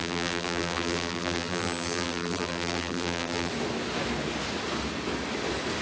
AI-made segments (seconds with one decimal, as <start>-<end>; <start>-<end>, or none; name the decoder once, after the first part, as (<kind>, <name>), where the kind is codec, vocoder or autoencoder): 0.0-3.5 (vocoder, BigVGAN v2)